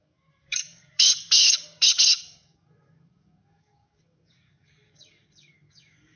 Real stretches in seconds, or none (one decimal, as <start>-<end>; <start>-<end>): none